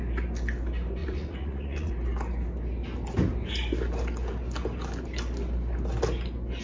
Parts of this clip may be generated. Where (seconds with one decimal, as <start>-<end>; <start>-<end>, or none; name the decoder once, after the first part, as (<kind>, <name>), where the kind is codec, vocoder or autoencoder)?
1.0-1.9 (vocoder, Vocos)